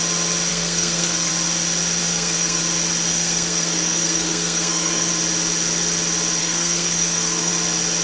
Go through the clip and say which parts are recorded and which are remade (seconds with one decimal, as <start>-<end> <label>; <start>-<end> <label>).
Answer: 0.0-0.5 recorded; 0.5-1.3 remade; 1.3-2.0 recorded; 2.0-2.6 remade; 2.6-3.1 recorded; 3.1-5.1 remade; 5.1-6.4 recorded; 6.4-7.5 remade; 7.5-8.0 recorded